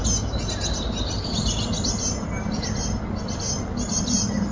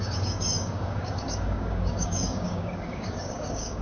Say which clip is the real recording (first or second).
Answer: first